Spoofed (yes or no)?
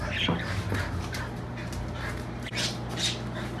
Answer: no